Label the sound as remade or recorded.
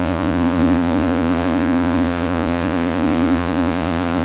remade